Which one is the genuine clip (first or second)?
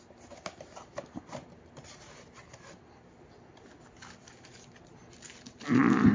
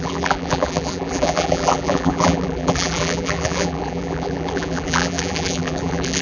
first